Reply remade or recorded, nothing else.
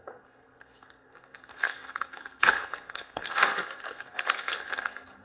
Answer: remade